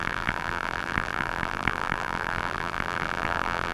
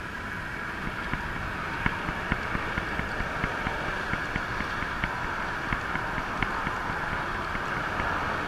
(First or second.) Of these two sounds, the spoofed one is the first